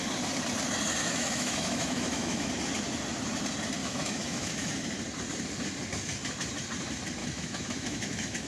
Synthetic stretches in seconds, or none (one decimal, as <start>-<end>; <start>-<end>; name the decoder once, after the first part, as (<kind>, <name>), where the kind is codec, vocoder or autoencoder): 1.0-2.5 (autoencoder, DAC-VAE); 3.8-4.7; 7.2-8.5

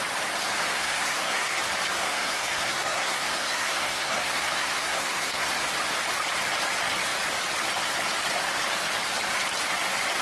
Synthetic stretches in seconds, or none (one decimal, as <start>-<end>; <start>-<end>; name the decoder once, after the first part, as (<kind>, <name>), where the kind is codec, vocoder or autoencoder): 0.7-1.6 (codec, SNAC); 2.0-5.5